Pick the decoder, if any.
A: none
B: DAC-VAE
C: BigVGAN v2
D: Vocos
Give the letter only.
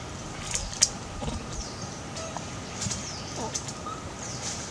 A